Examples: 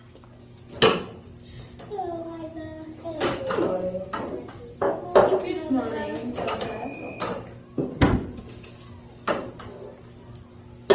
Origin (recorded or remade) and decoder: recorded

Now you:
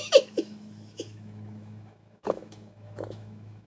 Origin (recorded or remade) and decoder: remade, autoencoder, DAC-VAE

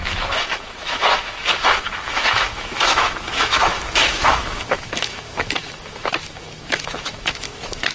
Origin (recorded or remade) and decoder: remade, autoencoder, DAC-VAE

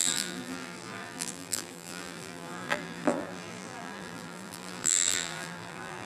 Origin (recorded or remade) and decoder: remade, vocoder, BigVGAN v2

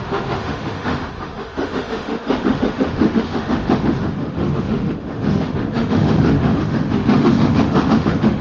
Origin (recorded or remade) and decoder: remade, autoencoder, DAC-VAE